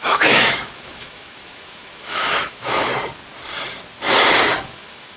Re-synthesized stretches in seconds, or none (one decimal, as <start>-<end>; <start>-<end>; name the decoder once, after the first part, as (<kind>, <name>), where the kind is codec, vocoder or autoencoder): 0.0-2.9 (autoencoder, DAC-VAE); 4.6-5.2